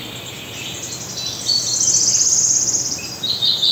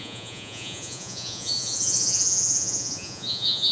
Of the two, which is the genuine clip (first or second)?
first